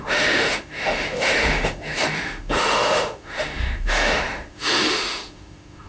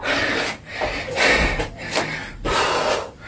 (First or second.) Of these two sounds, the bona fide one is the second